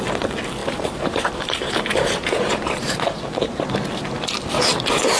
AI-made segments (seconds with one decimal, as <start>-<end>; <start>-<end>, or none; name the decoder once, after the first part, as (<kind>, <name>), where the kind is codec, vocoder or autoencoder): 0.6-3.7 (vocoder, BigVGAN v2)

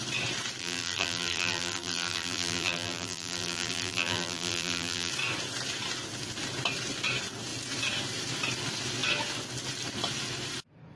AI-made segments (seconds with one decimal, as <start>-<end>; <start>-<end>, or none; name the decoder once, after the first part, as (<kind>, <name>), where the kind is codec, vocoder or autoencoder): 0.6-5.1 (vocoder, BigVGAN v2)

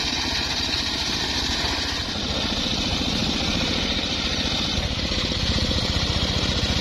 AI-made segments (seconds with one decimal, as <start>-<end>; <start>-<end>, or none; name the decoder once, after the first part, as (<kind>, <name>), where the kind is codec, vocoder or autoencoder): 2.0-6.1 (vocoder, BigVGAN v2)

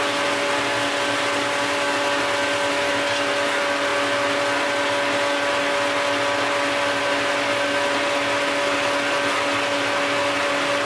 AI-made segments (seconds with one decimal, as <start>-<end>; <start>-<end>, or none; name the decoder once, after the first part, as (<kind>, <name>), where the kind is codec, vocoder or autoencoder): none

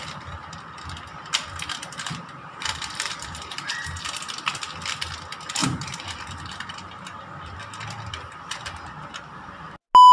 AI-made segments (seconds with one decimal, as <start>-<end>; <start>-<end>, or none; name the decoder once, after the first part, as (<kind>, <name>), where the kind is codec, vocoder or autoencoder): 1.4-4.2 (vocoder, BigVGAN v2); 5.6-7.3

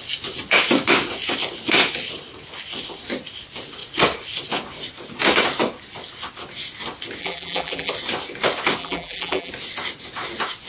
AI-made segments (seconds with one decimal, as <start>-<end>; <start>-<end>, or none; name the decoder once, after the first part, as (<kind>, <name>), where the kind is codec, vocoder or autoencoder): 7.2-7.9 (vocoder, BigVGAN v2); 8.8-9.5

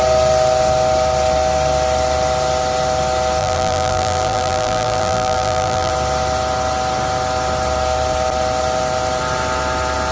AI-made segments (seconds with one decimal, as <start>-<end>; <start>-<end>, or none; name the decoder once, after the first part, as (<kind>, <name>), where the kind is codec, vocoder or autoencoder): 3.4-5.9 (vocoder, BigVGAN v2)